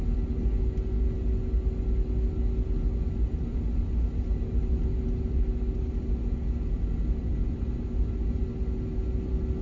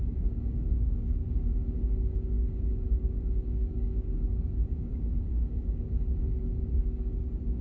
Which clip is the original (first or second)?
first